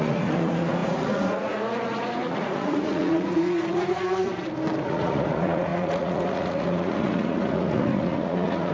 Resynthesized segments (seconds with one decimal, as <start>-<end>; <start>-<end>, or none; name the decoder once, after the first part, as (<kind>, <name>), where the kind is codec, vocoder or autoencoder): 0.0-4.3 (vocoder, Vocos); 4.8-8.7